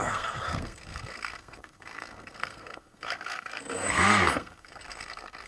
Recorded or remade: remade